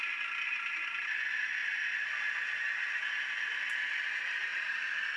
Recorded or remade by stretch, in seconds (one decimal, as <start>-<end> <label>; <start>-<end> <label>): 0.0-5.2 recorded